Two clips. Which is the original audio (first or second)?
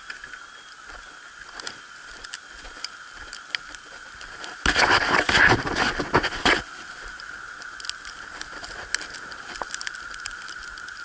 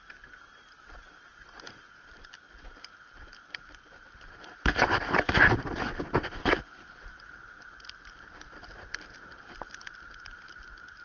first